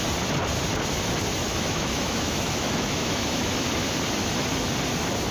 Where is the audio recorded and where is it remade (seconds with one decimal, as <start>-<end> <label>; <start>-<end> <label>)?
0.0-1.4 recorded; 1.4-3.5 remade; 3.5-5.3 recorded